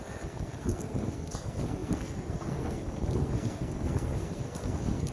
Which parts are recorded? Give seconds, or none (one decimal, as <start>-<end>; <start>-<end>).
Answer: none